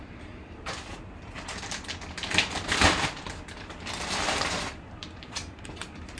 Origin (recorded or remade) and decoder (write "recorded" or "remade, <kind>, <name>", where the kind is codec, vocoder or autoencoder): remade, vocoder, BigVGAN v2